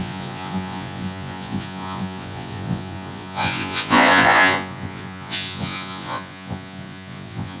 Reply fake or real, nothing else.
fake